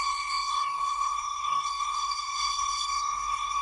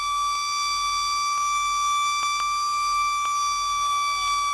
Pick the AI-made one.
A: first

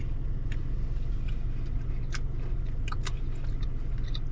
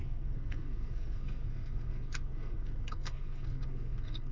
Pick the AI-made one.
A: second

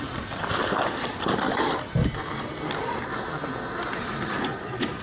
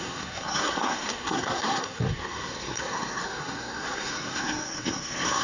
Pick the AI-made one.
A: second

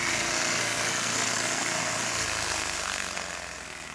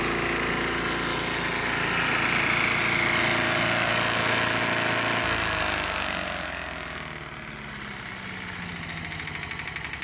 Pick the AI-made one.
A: first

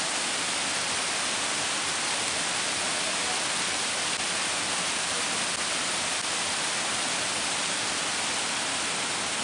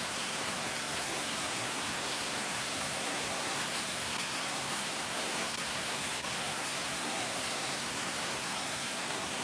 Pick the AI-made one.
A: second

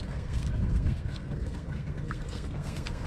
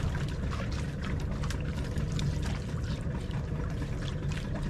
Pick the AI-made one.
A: first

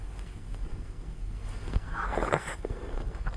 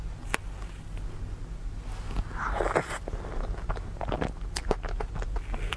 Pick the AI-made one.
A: first